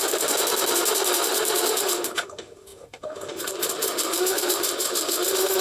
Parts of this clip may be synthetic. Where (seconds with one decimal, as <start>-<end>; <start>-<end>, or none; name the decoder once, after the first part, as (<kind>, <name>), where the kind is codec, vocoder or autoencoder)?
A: 0.0-5.6 (autoencoder, DAC-VAE)